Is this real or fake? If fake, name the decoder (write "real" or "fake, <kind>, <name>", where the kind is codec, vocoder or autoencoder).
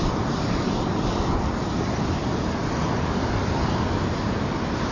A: real